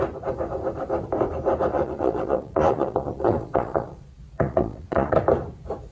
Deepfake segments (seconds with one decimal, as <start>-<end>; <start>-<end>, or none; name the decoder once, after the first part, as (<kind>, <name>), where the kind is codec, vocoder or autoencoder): 1.7-5.2 (vocoder, Vocos)